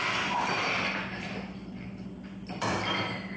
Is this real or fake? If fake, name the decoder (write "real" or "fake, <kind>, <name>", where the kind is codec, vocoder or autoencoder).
real